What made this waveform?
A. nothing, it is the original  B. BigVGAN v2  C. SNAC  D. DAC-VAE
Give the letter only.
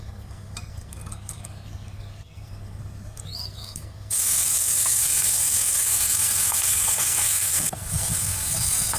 C